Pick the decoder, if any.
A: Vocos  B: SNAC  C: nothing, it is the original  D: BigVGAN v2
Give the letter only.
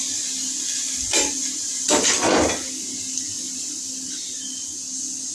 C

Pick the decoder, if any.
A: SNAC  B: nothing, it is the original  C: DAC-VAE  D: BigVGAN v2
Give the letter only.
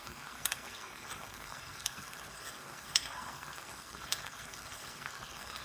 A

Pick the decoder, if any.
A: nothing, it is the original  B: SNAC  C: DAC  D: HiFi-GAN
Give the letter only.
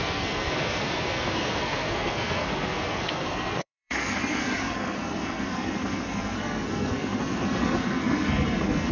B